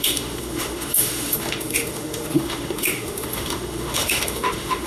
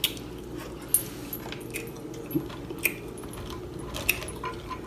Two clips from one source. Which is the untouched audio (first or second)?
second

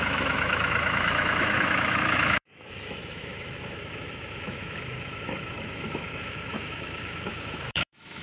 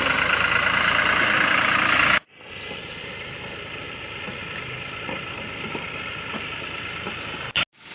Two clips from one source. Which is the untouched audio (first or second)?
second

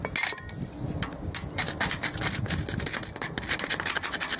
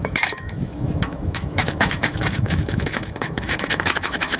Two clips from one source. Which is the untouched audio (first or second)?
first